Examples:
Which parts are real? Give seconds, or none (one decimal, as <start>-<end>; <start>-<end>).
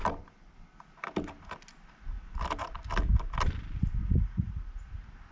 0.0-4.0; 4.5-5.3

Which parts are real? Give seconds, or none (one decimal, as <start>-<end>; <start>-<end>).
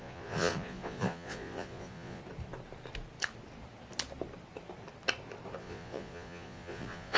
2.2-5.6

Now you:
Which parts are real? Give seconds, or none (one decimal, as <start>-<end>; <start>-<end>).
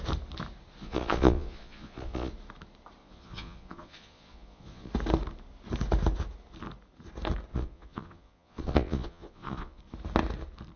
0.0-0.8; 2.3-3.0; 4.9-7.5; 9.8-10.8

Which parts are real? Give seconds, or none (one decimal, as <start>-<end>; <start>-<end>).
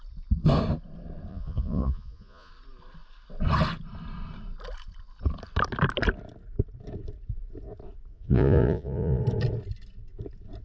0.0-1.3; 2.5-8.1; 9.2-10.6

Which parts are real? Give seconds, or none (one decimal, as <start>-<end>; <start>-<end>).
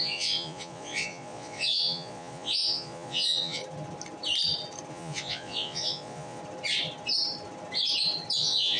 3.6-4.9; 6.4-8.4